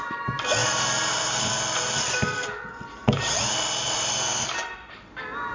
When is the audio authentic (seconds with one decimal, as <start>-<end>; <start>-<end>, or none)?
0.0-5.5